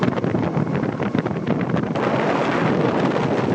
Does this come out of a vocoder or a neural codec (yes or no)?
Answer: no